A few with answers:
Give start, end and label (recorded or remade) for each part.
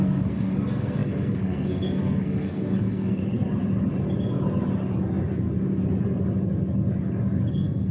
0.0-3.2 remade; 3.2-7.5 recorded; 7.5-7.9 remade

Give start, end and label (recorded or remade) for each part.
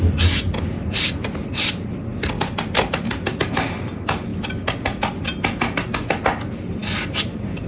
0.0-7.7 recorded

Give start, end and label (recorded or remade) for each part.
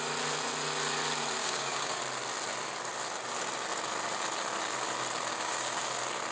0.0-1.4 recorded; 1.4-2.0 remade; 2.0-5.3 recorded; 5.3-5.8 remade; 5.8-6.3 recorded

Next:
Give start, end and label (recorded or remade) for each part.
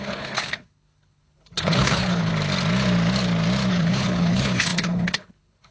0.0-2.3 remade; 2.3-3.7 recorded; 3.7-5.7 remade